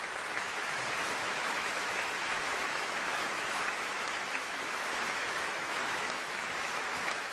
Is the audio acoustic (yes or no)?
no